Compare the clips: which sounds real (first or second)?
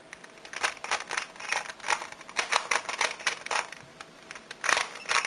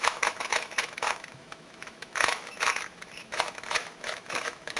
first